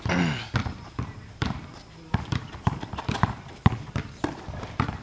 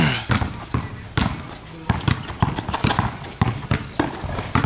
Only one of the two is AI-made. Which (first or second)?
first